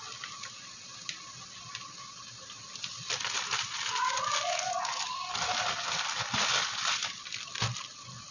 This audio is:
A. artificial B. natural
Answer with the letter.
B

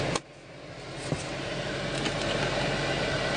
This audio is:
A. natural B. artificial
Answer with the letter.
A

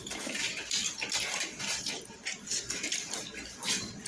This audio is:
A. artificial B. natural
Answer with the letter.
B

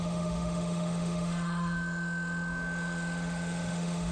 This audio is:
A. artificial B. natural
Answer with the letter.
A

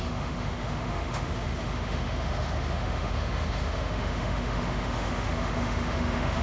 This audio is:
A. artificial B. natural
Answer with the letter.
A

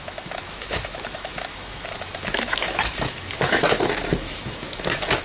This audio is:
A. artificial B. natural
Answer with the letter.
A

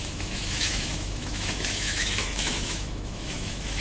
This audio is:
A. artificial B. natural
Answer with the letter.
A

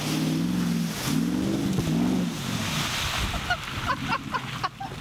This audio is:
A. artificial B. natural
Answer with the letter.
B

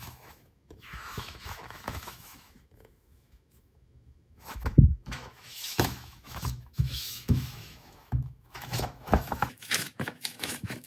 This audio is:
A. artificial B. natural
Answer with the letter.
A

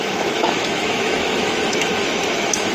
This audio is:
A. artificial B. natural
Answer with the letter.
A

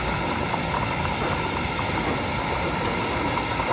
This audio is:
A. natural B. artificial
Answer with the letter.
A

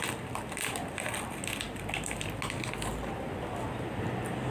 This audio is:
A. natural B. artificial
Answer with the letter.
A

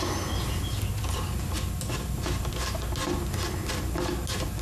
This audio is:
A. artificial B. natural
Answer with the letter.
B